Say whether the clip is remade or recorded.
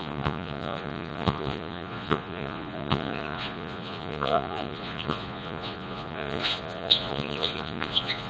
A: remade